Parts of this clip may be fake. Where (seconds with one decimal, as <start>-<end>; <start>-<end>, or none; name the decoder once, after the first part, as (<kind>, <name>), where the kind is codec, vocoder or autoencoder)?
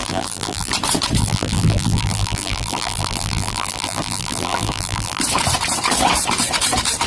0.0-0.7 (vocoder, BigVGAN v2); 1.2-5.2